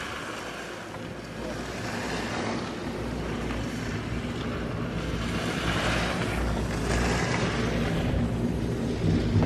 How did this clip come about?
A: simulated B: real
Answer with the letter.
B